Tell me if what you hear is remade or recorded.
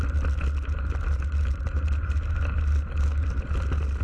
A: recorded